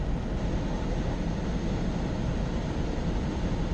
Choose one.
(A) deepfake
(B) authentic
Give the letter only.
B